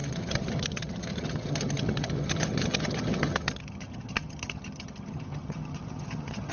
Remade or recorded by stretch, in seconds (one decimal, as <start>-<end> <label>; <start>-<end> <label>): 0.0-6.5 remade